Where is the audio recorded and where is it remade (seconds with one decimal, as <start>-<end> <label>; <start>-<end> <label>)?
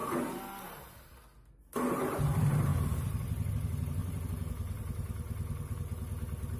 0.0-2.7 recorded; 2.7-3.5 remade; 3.5-4.0 recorded; 4.0-4.9 remade; 4.9-6.6 recorded